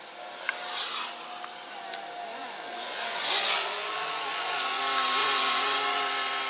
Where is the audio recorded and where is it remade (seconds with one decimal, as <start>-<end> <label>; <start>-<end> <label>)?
0.0-2.3 recorded; 2.3-4.8 remade; 4.8-5.2 recorded; 5.2-6.0 remade; 6.0-6.5 recorded